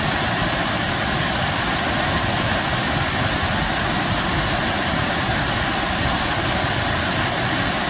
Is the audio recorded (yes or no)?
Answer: yes